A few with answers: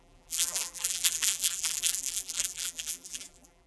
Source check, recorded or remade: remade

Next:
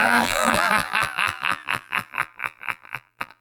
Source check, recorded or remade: remade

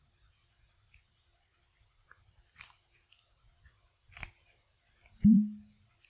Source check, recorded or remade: remade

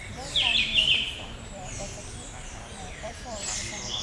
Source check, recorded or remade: remade